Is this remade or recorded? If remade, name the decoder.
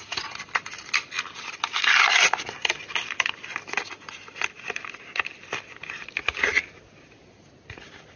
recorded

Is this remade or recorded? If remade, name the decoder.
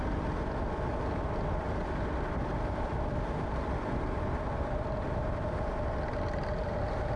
recorded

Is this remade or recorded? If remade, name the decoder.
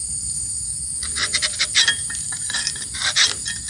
recorded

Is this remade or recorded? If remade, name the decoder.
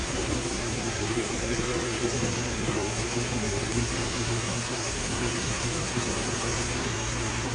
remade, codec, SNAC